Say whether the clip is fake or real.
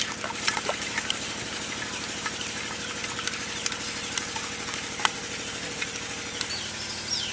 real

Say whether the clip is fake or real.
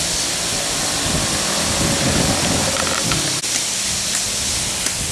real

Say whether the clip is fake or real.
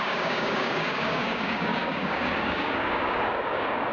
fake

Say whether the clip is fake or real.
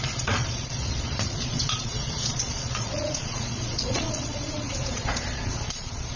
fake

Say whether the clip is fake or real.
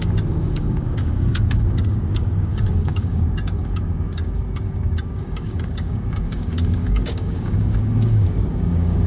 fake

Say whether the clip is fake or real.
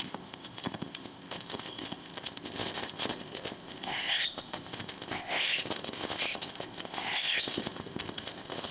fake